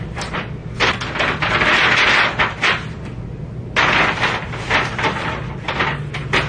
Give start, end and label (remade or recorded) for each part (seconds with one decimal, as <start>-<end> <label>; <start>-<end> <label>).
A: 0.0-0.6 recorded; 0.6-1.5 remade; 1.5-6.5 recorded